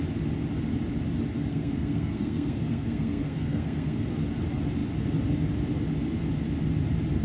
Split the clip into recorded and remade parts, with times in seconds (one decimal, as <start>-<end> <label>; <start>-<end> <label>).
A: 0.0-1.5 recorded; 1.5-4.1 remade; 4.1-7.2 recorded

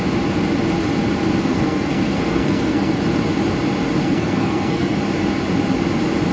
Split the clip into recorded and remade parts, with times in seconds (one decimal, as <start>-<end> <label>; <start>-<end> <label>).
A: 0.0-1.5 recorded; 1.5-3.0 remade; 3.0-4.0 recorded; 4.0-5.0 remade; 5.0-6.3 recorded

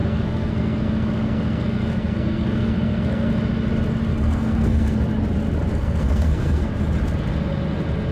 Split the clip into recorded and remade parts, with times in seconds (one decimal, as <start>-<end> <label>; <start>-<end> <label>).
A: 0.0-3.3 remade; 3.3-4.1 recorded; 4.1-5.0 remade; 5.0-5.7 recorded; 5.7-6.7 remade; 6.7-8.1 recorded

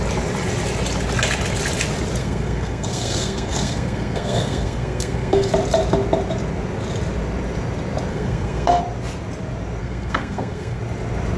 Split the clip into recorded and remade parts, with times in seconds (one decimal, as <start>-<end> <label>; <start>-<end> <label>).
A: 0.0-2.2 recorded; 2.2-5.5 remade; 5.5-8.1 recorded; 8.1-8.8 remade; 8.8-9.8 recorded; 9.8-10.8 remade; 10.8-11.4 recorded

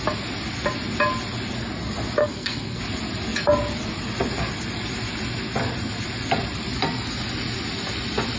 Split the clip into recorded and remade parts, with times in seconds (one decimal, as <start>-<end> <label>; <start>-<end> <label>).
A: 0.0-2.2 recorded; 2.2-2.8 remade; 2.8-8.4 recorded